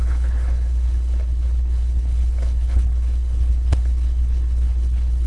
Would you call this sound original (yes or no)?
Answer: no